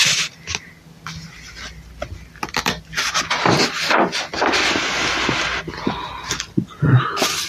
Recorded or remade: recorded